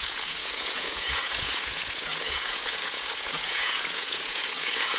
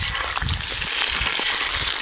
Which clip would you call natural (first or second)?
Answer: second